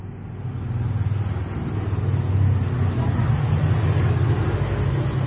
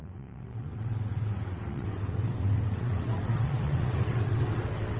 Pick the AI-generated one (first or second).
second